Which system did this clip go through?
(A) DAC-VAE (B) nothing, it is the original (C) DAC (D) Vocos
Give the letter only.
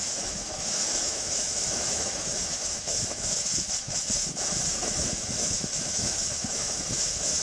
A